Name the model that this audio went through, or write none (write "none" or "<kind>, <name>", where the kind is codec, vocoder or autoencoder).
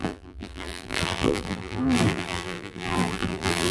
vocoder, BigVGAN v2